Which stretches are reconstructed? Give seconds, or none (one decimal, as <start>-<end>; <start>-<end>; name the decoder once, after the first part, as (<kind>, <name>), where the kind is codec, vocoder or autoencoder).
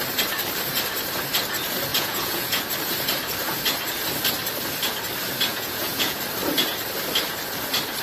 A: 1.9-2.6 (vocoder, Vocos); 5.5-6.2